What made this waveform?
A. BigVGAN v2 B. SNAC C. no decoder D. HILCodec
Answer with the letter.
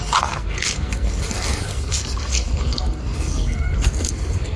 B